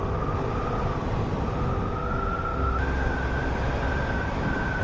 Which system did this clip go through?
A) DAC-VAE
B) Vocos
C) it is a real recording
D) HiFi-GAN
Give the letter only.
C